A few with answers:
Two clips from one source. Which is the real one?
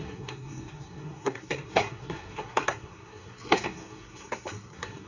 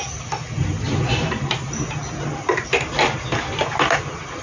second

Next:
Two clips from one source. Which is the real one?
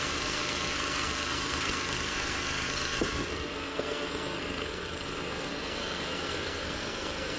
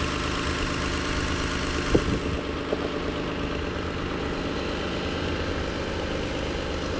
second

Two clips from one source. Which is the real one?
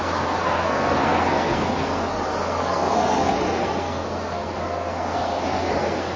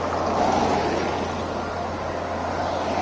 second